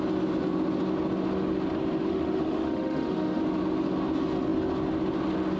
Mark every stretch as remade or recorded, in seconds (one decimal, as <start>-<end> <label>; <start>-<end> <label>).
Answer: 0.0-2.1 recorded; 2.1-3.4 remade; 3.4-5.6 recorded

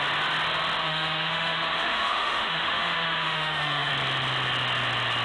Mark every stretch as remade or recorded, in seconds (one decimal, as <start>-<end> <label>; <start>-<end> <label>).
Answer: 0.0-0.8 recorded; 0.8-3.9 remade; 3.9-5.2 recorded

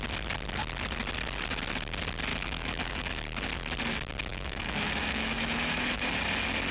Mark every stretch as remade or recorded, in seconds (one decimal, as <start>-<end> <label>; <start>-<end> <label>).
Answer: 0.0-2.3 recorded; 2.3-3.1 remade; 3.1-4.3 recorded; 4.3-6.0 remade; 6.0-6.7 recorded

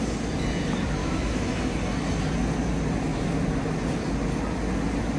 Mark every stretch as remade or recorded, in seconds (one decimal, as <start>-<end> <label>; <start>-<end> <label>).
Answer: 0.0-1.0 recorded; 1.0-1.5 remade; 1.5-5.2 recorded